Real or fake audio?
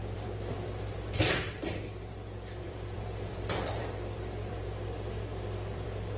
fake